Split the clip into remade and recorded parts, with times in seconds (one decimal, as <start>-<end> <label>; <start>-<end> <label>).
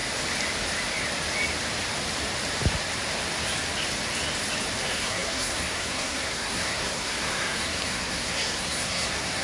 0.0-4.8 recorded; 4.8-9.4 remade